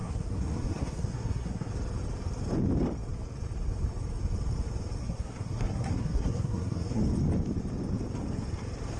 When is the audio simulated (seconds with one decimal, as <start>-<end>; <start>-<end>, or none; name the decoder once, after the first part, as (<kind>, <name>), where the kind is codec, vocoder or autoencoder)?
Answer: 0.0-1.7 (codec, SNAC); 5.0-7.0